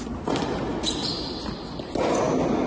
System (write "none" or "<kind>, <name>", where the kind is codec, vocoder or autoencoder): none